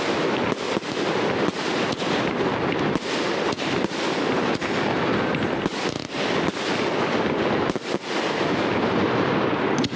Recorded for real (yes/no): yes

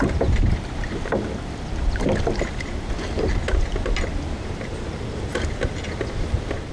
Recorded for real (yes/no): yes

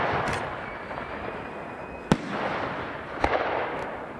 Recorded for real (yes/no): yes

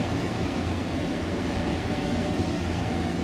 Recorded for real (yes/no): no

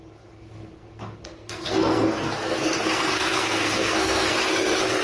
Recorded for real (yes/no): no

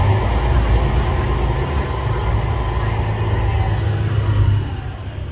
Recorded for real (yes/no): yes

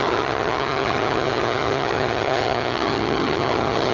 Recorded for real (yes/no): no